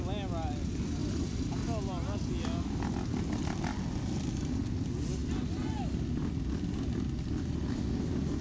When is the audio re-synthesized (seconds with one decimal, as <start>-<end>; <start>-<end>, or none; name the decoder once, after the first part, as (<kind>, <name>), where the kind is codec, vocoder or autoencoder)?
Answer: none